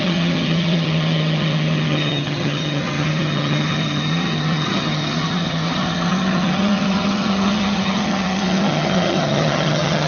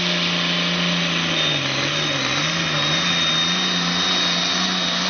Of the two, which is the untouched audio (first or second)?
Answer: second